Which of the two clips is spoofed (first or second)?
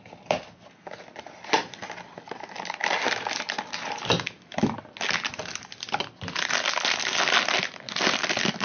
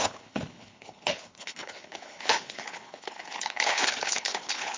second